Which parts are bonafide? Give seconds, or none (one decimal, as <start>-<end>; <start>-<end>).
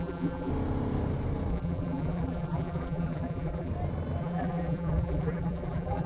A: 0.5-1.5; 3.7-4.2